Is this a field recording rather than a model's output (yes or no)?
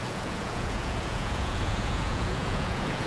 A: no